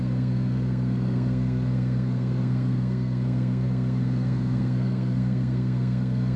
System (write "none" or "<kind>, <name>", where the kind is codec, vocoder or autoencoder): codec, SNAC